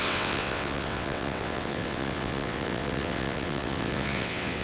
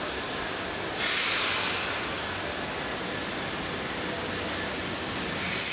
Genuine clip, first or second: second